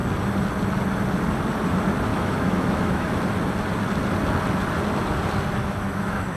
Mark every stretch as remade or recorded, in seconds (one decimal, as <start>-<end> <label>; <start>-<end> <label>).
0.0-2.1 recorded; 2.1-3.2 remade; 3.2-5.6 recorded; 5.6-6.4 remade